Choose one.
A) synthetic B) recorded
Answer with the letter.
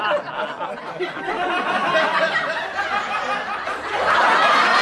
B